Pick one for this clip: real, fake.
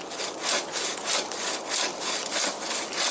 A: real